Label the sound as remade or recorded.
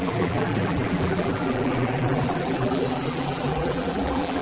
remade